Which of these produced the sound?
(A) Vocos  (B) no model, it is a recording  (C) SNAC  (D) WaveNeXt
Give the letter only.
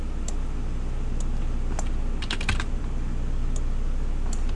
B